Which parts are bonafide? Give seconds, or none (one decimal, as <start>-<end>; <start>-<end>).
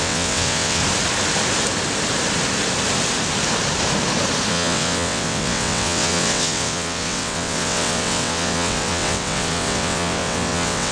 0.8-4.5